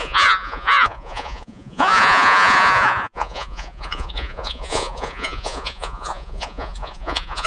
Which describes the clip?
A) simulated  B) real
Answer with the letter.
A